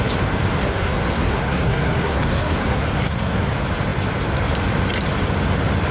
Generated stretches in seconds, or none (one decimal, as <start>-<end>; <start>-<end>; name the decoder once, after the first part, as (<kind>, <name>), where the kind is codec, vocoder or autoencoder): 0.7-3.5 (codec, SNAC)